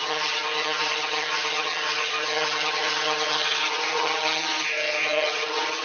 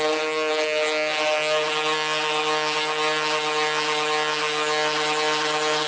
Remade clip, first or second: first